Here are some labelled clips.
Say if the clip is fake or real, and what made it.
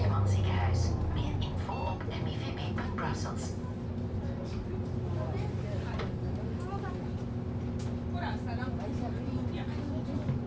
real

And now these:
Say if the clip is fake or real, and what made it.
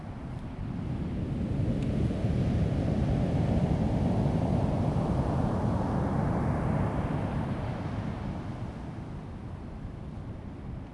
real